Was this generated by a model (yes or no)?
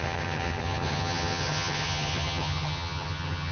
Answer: yes